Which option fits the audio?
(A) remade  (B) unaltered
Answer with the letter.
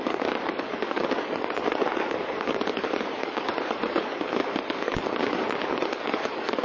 A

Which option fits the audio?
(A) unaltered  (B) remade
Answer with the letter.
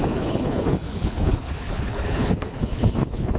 B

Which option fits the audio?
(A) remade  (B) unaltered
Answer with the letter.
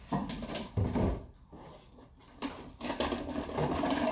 B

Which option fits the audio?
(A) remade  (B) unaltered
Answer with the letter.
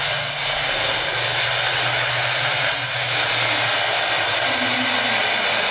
B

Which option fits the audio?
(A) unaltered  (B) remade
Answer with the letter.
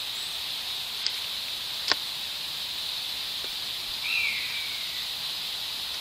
A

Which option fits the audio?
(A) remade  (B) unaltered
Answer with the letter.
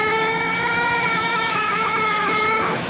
A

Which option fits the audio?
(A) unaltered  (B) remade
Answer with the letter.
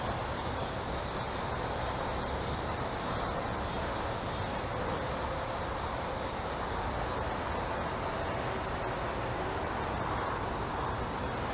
A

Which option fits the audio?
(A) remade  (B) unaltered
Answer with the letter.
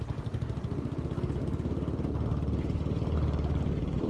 B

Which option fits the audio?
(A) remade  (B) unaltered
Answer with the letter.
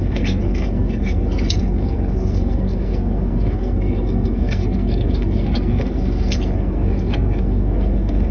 A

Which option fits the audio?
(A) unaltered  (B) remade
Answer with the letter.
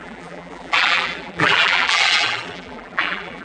B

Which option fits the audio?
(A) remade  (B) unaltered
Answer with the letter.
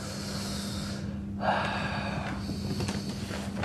B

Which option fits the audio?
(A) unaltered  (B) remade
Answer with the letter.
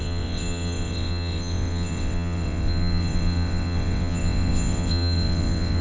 B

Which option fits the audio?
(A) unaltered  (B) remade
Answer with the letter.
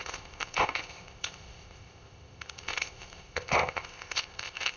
B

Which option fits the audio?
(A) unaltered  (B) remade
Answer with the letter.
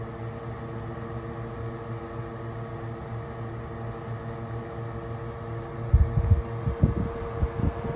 A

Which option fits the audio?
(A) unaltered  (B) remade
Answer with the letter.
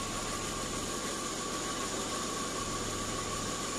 A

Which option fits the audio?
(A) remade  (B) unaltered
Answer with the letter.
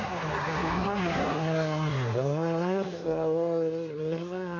A